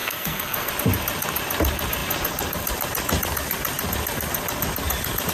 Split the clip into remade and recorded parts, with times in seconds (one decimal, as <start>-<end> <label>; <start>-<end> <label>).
0.0-0.7 remade; 0.7-5.3 recorded